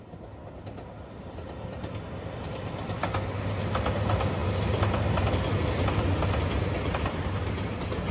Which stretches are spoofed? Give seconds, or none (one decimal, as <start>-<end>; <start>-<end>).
none